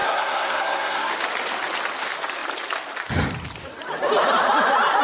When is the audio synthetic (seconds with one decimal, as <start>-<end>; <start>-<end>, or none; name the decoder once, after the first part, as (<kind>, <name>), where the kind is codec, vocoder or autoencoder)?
0.0-1.1 (codec, SNAC)